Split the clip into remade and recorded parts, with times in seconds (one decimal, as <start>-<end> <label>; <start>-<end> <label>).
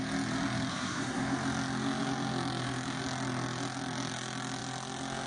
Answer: 0.0-0.7 recorded; 0.7-1.2 remade; 1.2-5.3 recorded